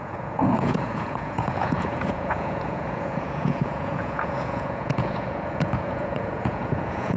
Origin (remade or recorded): remade